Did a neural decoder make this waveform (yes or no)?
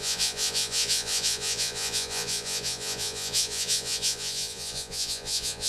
yes